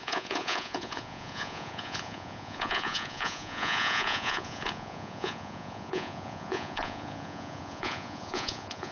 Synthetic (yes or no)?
yes